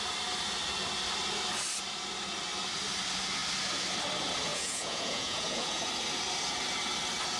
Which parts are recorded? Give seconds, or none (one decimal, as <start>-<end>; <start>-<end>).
0.0-4.5; 5.9-7.4